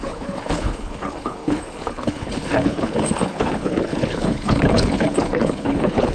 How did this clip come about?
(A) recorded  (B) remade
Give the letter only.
B